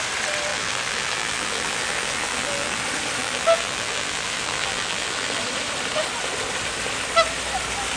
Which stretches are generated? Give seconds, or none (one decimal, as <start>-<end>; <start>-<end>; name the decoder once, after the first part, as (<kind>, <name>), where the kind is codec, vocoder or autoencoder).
0.5-2.8 (vocoder, BigVGAN v2); 3.2-5.4